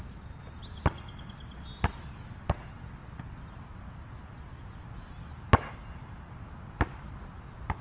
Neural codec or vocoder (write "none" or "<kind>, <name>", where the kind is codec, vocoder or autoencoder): none